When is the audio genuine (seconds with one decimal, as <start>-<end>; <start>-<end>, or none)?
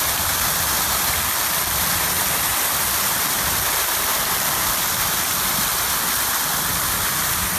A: 0.0-7.6